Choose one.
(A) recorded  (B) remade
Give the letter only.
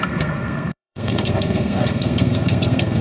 B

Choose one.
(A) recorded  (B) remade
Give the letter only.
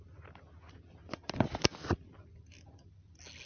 A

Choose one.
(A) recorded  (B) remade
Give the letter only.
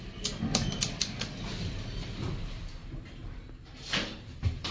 A